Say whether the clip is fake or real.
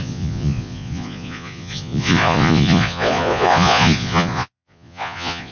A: fake